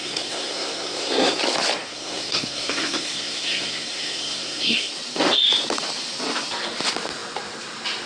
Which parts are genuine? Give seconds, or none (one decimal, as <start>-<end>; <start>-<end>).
1.4-1.9; 4.9-8.1